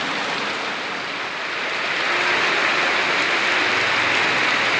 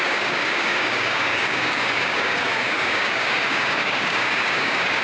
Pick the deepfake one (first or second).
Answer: second